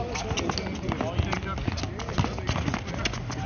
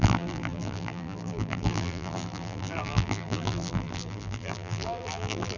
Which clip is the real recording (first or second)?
first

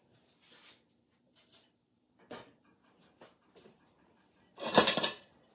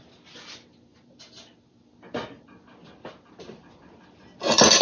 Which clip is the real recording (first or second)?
second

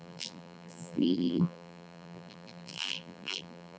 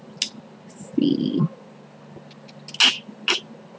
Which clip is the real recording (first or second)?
second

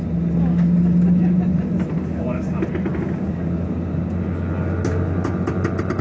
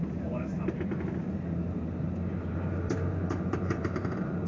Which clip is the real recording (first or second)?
first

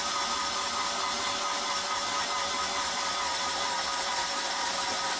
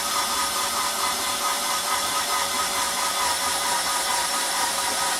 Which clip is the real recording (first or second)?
first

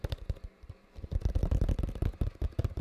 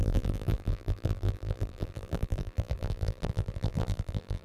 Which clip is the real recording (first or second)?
first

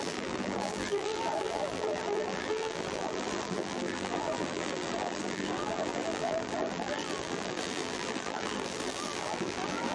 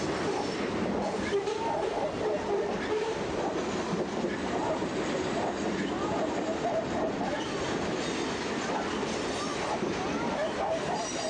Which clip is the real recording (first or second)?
second